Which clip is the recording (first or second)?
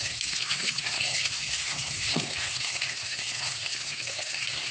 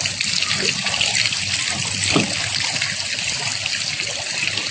second